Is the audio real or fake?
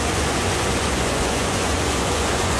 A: fake